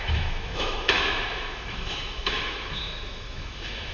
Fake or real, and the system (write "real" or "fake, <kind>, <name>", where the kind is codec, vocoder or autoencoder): fake, autoencoder, DAC-VAE